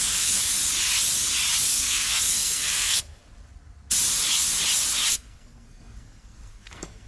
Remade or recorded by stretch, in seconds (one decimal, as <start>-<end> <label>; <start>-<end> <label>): 0.0-0.5 remade; 0.5-1.7 recorded; 1.7-3.2 remade; 3.2-5.1 recorded; 5.1-7.1 remade